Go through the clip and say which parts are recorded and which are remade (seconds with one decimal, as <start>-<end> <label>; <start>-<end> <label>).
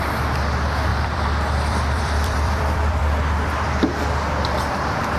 0.0-0.9 recorded; 0.9-3.0 remade; 3.0-5.2 recorded